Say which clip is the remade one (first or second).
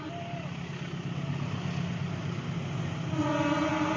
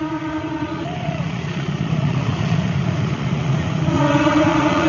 second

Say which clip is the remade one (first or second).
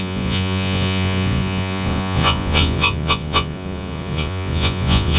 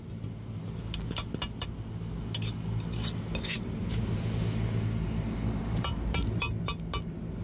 first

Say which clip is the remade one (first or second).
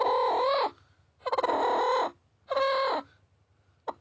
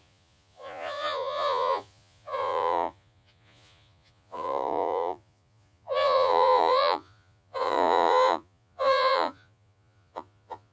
second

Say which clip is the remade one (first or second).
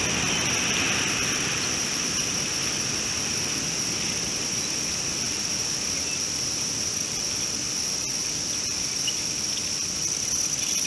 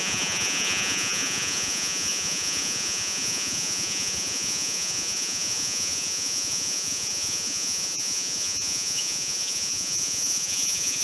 second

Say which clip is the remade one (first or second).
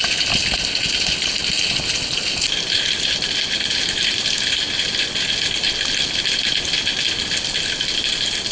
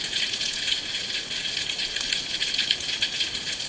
second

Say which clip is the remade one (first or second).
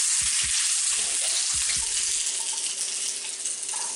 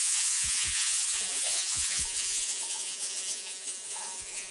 second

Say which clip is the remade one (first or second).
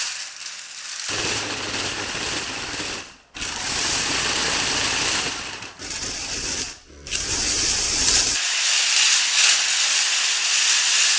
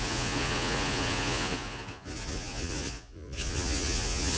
second